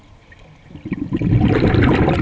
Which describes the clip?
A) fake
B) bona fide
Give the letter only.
B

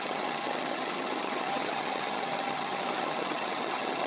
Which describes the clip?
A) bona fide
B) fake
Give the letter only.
B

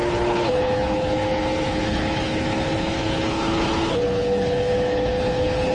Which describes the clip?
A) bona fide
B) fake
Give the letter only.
B